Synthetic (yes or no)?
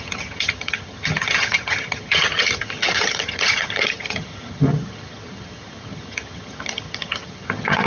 yes